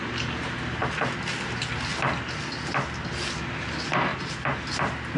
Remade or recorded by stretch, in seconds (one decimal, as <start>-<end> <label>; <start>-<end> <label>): 0.0-5.2 recorded